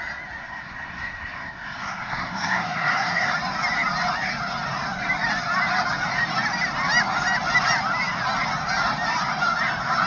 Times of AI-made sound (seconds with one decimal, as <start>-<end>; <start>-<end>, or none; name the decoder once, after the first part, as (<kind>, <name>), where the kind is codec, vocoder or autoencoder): 0.4-3.3 (codec, SNAC)